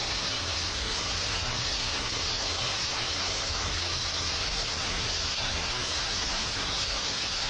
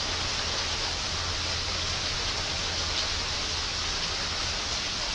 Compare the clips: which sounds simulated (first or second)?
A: first